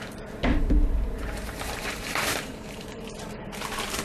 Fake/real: fake